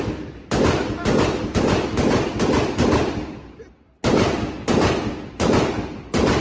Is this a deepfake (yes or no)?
no